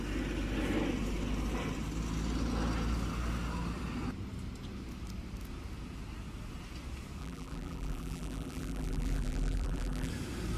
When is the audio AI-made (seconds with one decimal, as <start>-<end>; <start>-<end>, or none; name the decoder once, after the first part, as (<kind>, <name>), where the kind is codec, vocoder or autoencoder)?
7.2-10.1 (vocoder, BigVGAN v2)